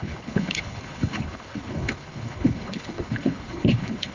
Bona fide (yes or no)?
no